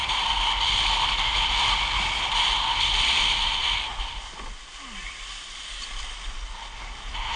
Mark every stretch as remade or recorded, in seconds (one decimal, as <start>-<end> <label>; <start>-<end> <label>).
0.0-7.4 recorded